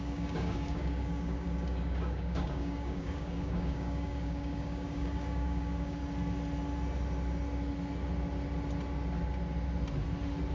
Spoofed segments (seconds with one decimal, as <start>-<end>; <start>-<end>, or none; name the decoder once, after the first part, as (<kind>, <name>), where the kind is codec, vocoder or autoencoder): 0.0-6.0 (codec, DAC)

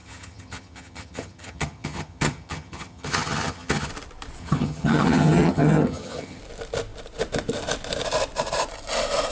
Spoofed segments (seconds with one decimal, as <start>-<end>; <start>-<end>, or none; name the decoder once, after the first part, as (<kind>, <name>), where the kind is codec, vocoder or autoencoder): 0.0-3.9 (vocoder, HiFi-GAN); 4.4-6.4

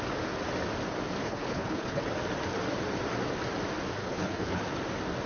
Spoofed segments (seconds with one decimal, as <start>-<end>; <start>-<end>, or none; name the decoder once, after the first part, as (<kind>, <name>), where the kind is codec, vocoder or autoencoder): 1.2-2.0 (codec, HILCodec); 4.0-4.6

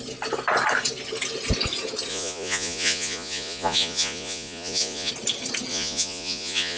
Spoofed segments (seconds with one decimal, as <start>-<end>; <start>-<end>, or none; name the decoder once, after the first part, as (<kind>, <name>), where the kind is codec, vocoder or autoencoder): 2.1-5.1 (vocoder, Vocos); 5.7-6.8

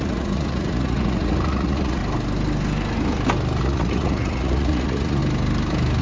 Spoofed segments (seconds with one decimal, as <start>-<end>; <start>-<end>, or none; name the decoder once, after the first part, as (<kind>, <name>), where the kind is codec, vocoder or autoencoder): 0.0-2.0 (vocoder, Vocos); 3.6-5.2

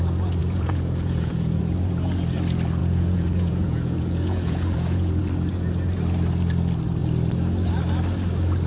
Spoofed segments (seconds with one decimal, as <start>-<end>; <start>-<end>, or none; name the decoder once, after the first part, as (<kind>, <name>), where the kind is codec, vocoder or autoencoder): 0.4-1.6 (vocoder, Vocos); 2.8-5.2

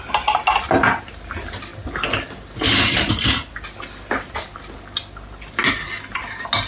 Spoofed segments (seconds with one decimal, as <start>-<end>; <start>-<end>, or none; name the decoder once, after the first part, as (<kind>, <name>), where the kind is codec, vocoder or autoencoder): none

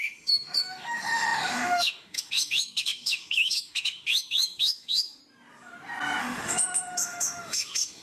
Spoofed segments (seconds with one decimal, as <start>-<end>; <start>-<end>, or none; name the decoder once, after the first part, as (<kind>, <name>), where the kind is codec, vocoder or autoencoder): 0.0-5.2 (autoencoder, DAC-VAE); 6.2-8.0